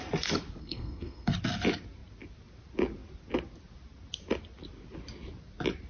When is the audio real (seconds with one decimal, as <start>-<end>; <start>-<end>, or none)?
0.0-0.6; 1.3-5.9